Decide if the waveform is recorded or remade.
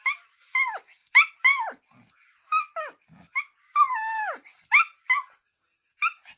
recorded